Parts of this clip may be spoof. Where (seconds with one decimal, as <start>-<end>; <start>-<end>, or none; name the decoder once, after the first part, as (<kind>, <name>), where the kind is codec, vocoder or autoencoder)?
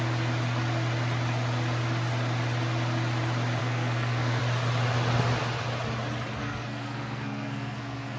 3.6-4.4 (codec, SNAC); 6.4-8.2